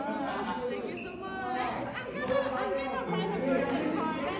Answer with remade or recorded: recorded